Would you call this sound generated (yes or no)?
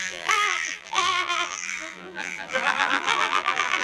yes